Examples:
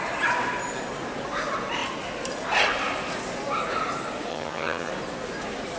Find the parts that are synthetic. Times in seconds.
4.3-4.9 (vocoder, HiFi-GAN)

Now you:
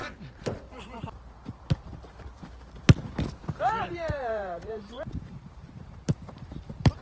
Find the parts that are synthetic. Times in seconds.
0.0-1.9 (vocoder, BigVGAN v2); 3.3-7.0

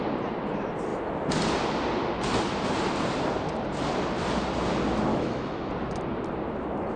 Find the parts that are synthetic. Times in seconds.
5.1-5.7 (autoencoder, DAC-VAE)

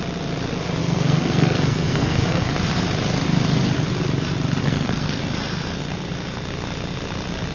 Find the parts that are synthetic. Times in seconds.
0.8-2.5 (codec, SNAC); 4.6-5.2

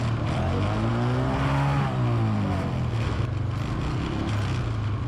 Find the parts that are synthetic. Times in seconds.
none

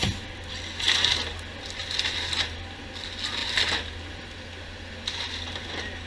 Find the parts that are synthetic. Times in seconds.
none

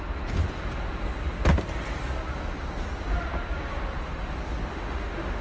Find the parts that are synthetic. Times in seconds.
4.7-5.4 (autoencoder, DAC-VAE)